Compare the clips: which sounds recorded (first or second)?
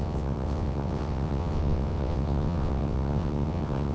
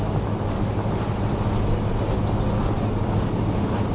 second